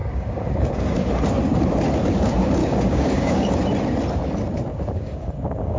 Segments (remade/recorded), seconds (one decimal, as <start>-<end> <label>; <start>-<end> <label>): 0.0-1.2 remade; 1.2-2.6 recorded; 2.6-3.5 remade; 3.5-4.7 recorded; 4.7-5.8 remade